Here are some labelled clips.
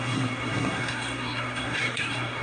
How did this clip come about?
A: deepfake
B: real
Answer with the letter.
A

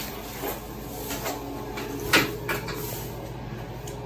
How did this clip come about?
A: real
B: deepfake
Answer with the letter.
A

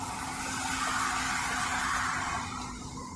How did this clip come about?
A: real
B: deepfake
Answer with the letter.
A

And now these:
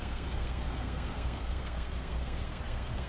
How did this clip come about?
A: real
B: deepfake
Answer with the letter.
B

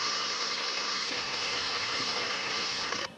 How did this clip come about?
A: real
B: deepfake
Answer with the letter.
B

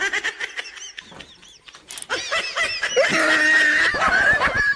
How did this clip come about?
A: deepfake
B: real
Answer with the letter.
B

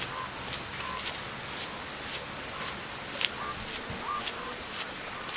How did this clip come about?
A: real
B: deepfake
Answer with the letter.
A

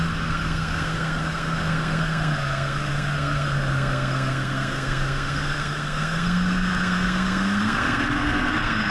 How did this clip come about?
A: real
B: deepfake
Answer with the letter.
B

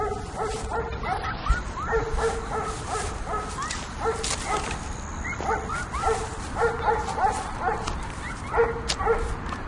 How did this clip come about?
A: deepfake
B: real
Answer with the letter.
B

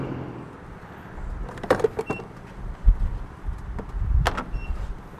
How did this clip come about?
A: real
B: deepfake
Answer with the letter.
A